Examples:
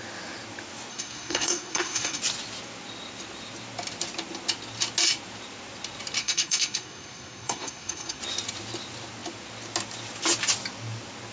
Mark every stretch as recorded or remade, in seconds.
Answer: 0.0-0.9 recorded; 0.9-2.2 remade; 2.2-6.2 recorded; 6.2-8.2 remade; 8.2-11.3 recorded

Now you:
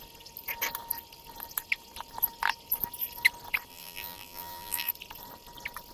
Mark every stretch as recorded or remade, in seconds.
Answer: 0.0-3.7 recorded; 3.7-4.9 remade; 4.9-5.9 recorded

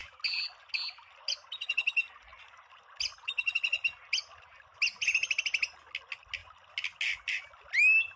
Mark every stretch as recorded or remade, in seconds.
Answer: 0.0-8.2 recorded

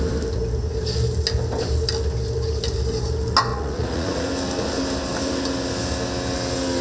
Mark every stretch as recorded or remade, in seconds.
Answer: 0.0-3.5 recorded; 3.5-4.3 remade; 4.3-6.8 recorded

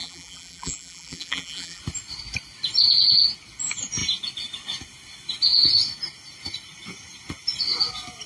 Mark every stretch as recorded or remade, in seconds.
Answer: 0.0-1.8 remade; 1.8-8.3 recorded